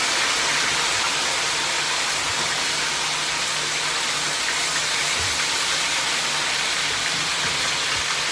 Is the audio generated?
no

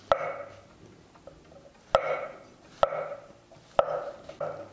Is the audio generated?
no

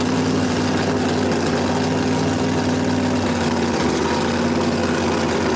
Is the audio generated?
no